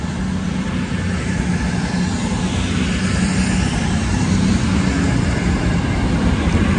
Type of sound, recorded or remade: recorded